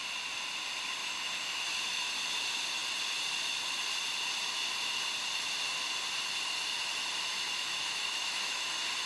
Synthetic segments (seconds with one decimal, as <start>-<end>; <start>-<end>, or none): 1.0-2.1; 7.3-8.7